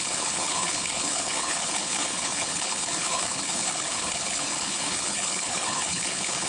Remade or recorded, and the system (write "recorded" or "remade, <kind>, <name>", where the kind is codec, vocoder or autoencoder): remade, codec, HILCodec